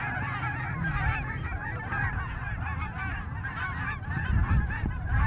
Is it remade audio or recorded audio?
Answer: recorded